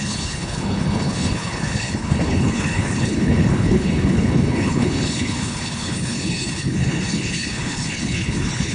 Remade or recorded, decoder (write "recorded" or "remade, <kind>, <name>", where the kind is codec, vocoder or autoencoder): remade, codec, HILCodec